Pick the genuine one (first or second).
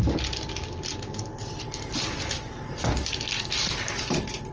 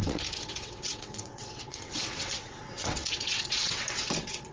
first